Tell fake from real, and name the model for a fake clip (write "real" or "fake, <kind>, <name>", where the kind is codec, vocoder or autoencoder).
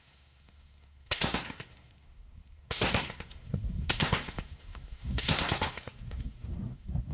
fake, codec, SNAC